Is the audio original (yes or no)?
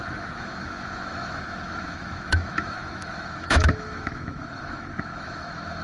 no